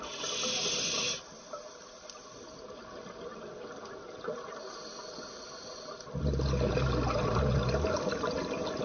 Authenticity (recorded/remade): recorded